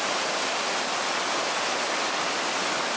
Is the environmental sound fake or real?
real